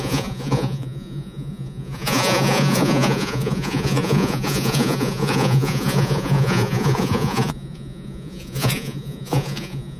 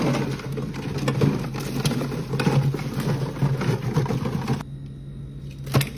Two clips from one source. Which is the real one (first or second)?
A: second